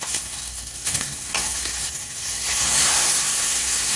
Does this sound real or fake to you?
fake